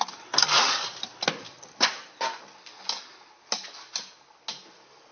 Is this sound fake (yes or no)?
no